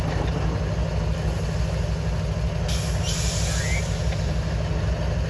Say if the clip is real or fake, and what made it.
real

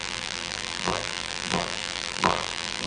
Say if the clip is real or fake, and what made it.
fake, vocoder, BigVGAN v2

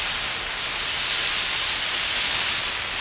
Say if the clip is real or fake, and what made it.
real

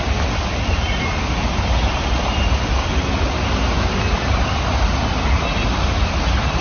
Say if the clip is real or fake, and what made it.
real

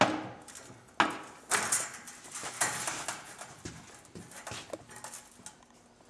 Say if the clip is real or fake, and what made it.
real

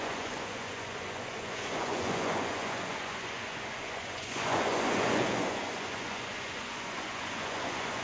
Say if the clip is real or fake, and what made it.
fake, vocoder, Vocos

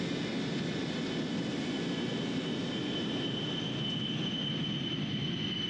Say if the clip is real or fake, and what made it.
real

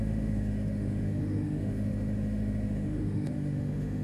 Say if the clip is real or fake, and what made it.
fake, autoencoder, DAC-VAE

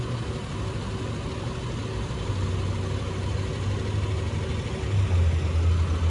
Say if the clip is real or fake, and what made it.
real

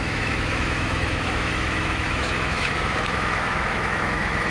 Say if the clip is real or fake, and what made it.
fake, autoencoder, DAC-VAE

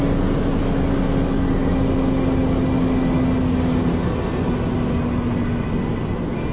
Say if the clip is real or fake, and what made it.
real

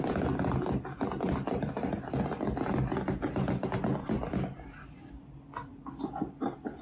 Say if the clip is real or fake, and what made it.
real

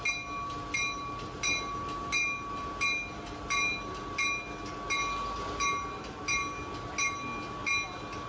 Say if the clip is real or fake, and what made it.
real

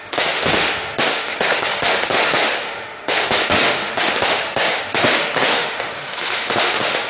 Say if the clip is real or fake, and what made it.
fake, autoencoder, DAC-VAE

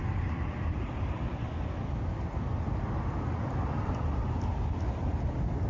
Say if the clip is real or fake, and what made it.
real